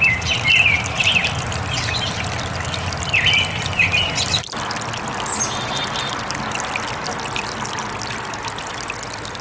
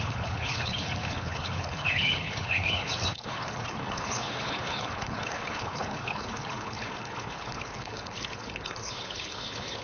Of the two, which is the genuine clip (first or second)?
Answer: first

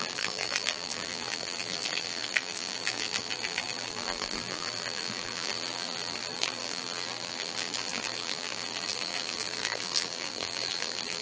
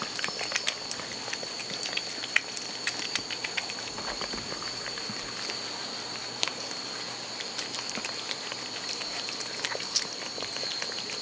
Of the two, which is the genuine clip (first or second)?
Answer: second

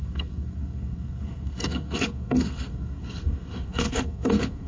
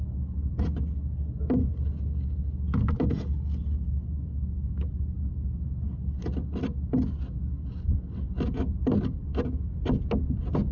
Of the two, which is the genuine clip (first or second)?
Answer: second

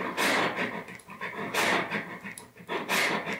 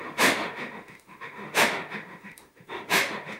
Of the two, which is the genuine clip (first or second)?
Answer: first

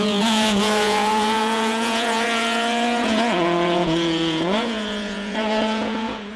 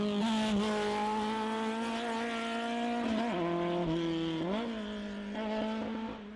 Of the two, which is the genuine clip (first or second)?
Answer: second